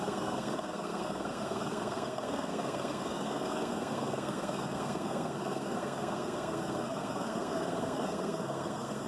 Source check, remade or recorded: remade